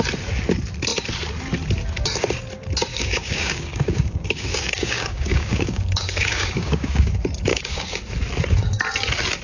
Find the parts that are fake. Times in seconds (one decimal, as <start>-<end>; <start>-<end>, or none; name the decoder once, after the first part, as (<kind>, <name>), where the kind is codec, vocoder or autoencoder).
2.9-7.1 (codec, DAC); 7.5-8.0